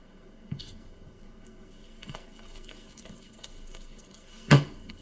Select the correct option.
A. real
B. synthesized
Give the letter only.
B